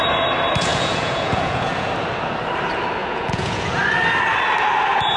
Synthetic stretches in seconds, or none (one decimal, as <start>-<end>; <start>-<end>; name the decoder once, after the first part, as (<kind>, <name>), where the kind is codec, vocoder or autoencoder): 0.7-1.9 (vocoder, Vocos); 3.0-3.8